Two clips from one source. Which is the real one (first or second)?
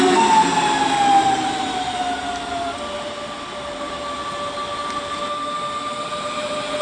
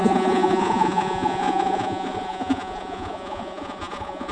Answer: first